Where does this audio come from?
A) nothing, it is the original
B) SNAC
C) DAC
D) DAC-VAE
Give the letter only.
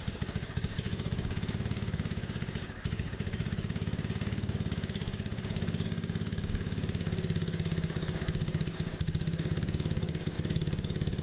C